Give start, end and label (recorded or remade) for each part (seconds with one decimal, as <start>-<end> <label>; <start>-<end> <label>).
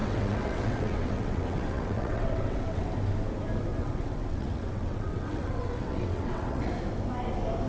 0.0-2.9 remade; 2.9-3.7 recorded; 3.7-6.7 remade; 6.7-7.7 recorded